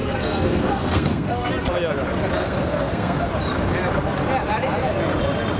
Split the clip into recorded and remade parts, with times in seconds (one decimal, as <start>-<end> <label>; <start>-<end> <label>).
0.0-1.5 remade; 1.5-2.4 recorded; 2.4-3.3 remade; 3.3-5.6 recorded